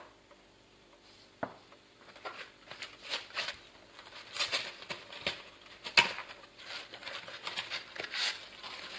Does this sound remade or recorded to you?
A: recorded